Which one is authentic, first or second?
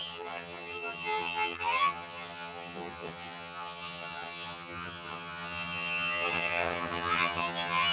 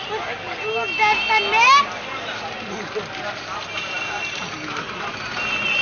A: second